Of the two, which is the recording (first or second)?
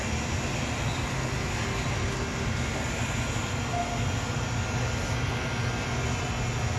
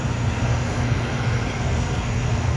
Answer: first